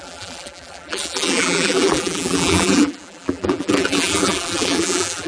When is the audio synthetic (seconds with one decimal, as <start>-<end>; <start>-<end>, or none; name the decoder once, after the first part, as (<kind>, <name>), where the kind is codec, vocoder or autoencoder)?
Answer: 0.0-5.3 (vocoder, BigVGAN v2)